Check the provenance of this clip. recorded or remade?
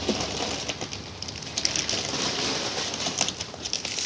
recorded